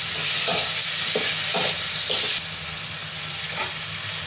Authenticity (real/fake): real